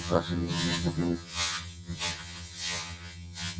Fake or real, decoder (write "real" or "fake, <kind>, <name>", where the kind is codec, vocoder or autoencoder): fake, vocoder, HiFi-GAN